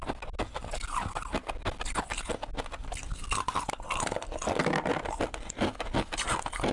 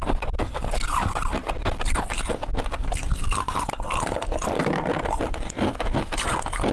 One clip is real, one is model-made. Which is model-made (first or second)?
second